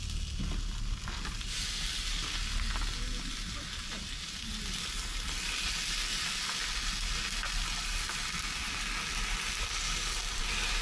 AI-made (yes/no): no